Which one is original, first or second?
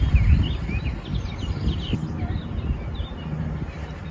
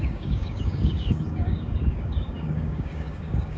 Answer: first